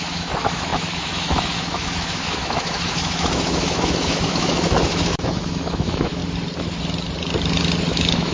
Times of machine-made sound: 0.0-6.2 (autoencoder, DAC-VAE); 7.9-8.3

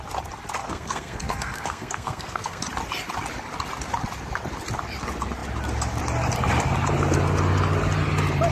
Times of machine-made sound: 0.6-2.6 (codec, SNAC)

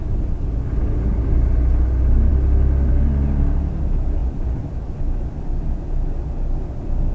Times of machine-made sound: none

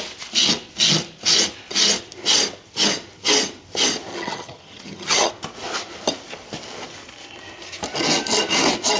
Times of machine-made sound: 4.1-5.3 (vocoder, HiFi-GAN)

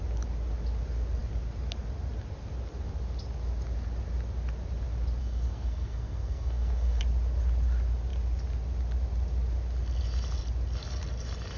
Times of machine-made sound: 5.2-7.0 (codec, SNAC)